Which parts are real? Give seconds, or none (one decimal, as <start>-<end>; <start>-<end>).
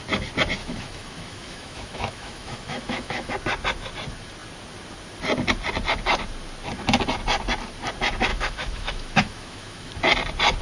0.0-0.6; 3.3-8.3; 9.9-10.6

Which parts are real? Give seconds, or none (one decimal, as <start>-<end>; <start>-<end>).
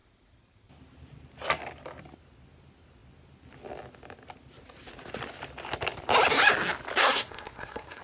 0.0-7.0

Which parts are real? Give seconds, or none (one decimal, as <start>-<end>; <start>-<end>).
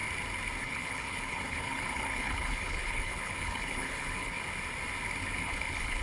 0.0-0.6; 4.4-5.2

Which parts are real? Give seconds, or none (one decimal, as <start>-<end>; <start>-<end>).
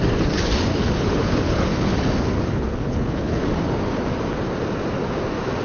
0.0-0.7; 3.4-5.6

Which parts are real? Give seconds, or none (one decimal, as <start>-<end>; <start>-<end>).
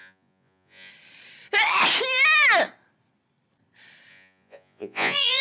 0.9-4.1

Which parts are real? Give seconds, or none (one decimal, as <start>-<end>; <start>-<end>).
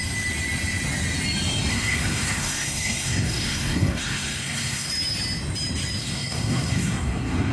0.0-1.7; 4.9-6.0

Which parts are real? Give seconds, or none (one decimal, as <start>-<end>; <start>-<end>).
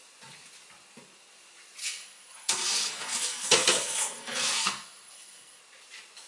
0.0-1.8; 5.6-6.3